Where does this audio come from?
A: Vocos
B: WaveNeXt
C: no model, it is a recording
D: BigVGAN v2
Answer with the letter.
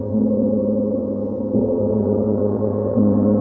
B